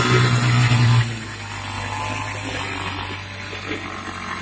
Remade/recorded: recorded